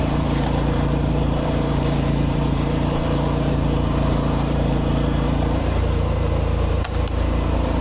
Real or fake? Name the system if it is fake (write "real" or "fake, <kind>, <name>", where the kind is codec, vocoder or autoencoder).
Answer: fake, vocoder, BigVGAN v2